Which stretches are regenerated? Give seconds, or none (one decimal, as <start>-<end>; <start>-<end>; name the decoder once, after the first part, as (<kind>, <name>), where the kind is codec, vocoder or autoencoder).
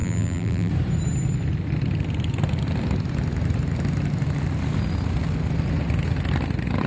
0.0-0.7 (vocoder, BigVGAN v2)